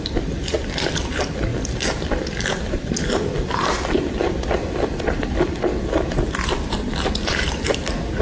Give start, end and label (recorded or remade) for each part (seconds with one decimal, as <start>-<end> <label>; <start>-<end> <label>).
0.0-8.2 recorded